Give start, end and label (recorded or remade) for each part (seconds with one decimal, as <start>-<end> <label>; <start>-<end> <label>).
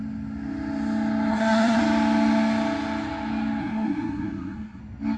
0.0-1.3 recorded; 1.3-1.8 remade; 1.8-3.6 recorded; 3.6-4.8 remade; 4.8-5.2 recorded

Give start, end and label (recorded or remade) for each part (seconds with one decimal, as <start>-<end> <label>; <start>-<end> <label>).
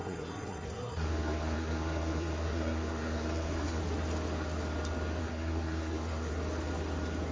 0.0-3.8 remade; 3.8-5.2 recorded; 5.2-6.3 remade; 6.3-7.3 recorded